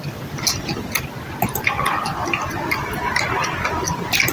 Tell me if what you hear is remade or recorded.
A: recorded